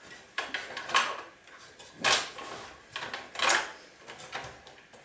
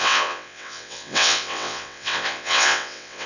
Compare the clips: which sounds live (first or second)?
first